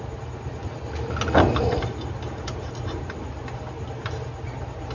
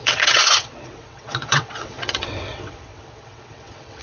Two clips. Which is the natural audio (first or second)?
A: first